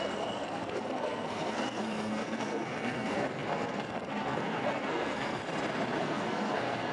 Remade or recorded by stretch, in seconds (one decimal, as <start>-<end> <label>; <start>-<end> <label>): 0.0-5.4 remade; 5.4-6.0 recorded; 6.0-6.9 remade